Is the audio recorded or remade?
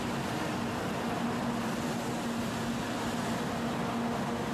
recorded